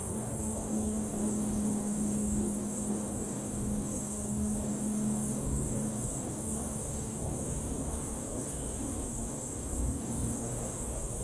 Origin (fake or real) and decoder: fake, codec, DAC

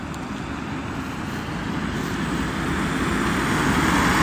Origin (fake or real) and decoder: real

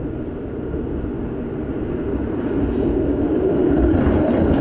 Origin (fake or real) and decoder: real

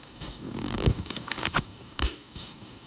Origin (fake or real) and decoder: fake, codec, DAC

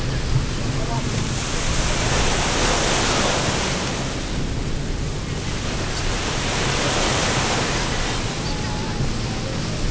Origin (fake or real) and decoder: real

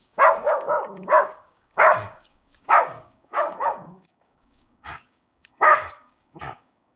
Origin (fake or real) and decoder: fake, codec, DAC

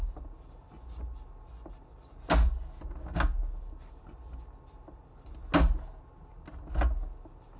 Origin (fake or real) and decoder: real